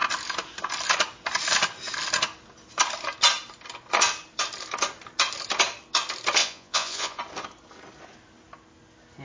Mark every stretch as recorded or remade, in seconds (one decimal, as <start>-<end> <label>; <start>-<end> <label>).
0.0-6.4 recorded; 6.4-7.2 remade; 7.2-9.2 recorded